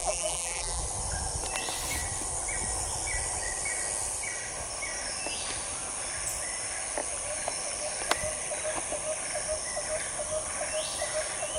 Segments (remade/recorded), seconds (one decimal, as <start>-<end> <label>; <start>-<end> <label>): 0.0-0.8 remade; 0.8-11.6 recorded